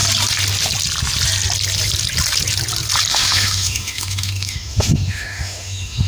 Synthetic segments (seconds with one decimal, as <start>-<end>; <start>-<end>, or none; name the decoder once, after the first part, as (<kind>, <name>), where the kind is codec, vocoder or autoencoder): 3.1-6.1 (autoencoder, DAC-VAE)